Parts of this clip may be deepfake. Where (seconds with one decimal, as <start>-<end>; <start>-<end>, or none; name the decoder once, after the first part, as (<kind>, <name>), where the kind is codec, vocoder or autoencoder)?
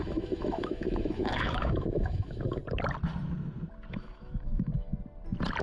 0.0-2.6 (autoencoder, DAC-VAE); 3.9-4.9